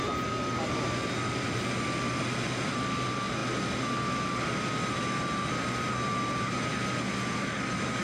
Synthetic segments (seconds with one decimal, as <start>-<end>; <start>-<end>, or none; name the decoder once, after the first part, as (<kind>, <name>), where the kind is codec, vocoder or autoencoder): none